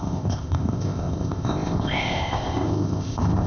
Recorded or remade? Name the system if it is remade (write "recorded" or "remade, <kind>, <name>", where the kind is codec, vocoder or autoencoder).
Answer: remade, codec, ZipCodec